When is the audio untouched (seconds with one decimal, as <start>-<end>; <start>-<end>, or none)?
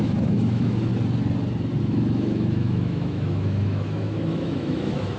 0.9-1.8